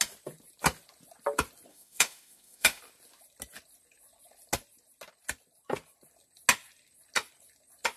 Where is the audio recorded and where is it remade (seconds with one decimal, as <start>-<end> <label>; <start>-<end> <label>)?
0.0-1.7 recorded; 1.7-2.8 remade; 2.8-8.0 recorded